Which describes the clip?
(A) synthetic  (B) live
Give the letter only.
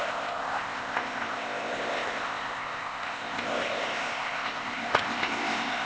A